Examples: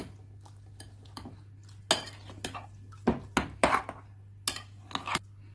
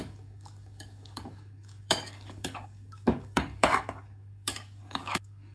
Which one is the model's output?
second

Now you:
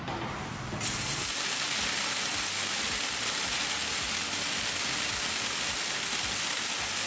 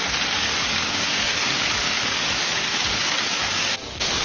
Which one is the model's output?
second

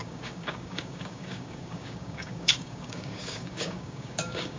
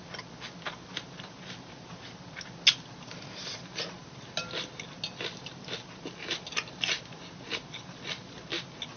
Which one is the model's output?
first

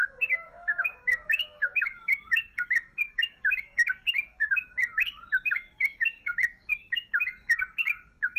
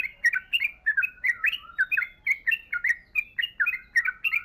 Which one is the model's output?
first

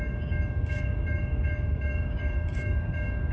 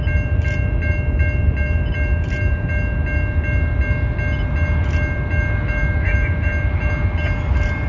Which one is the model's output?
first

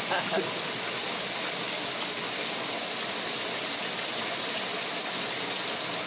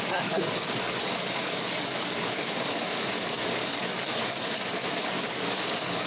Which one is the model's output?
second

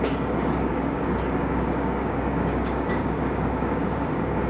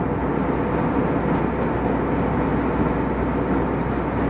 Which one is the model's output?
first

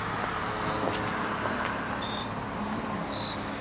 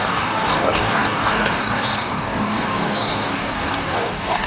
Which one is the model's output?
second